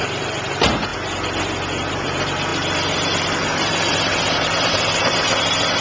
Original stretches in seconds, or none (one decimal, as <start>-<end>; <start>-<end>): 0.9-1.9